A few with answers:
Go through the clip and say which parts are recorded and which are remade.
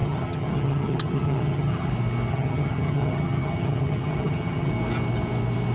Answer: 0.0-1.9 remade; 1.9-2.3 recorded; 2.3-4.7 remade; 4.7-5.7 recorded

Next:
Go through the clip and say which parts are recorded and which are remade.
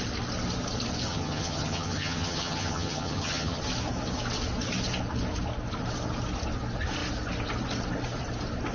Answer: 0.0-1.1 recorded; 1.1-3.6 remade; 3.6-8.7 recorded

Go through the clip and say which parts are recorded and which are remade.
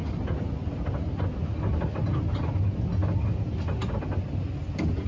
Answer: 0.0-5.1 recorded